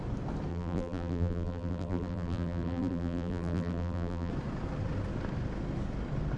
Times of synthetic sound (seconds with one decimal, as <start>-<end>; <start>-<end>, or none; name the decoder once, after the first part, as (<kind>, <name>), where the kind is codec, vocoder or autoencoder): 0.5-4.3 (vocoder, BigVGAN v2)